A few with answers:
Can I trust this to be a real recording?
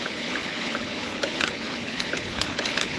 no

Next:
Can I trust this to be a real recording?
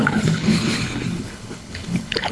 no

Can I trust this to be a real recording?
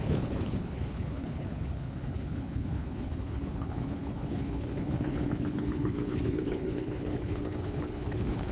no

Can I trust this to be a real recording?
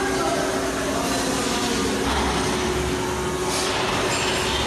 yes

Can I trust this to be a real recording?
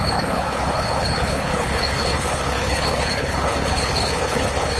no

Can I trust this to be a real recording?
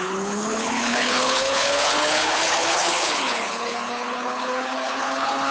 no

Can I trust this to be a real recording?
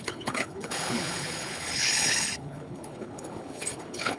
no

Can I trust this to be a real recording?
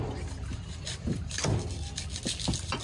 yes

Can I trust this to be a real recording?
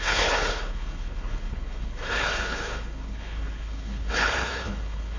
no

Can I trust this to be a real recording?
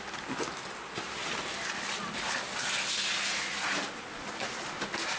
yes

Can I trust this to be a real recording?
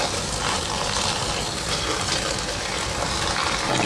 yes